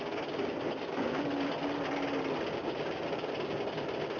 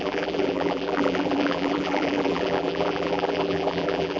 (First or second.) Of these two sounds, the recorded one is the first